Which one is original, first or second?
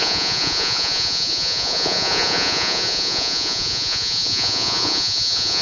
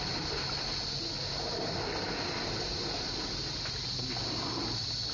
second